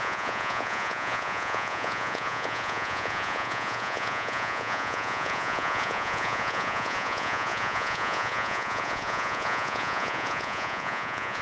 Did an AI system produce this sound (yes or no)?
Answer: yes